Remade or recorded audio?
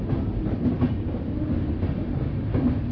recorded